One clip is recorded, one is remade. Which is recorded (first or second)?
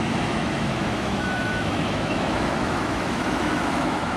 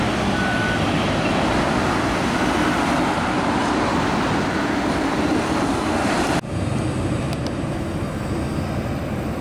second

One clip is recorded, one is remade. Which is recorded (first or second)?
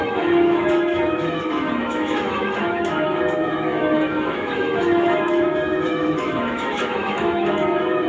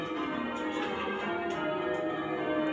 second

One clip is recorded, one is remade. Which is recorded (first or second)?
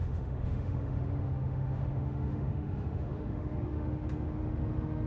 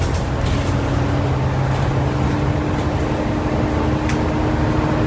second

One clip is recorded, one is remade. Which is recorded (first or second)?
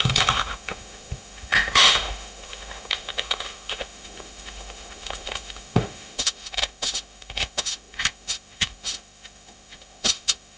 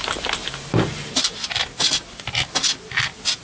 second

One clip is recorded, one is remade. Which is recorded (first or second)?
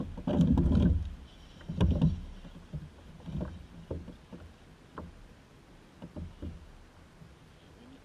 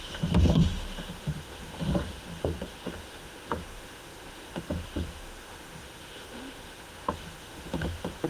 first